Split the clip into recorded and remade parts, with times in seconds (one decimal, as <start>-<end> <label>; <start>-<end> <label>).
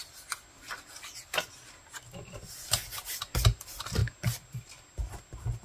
0.0-5.6 recorded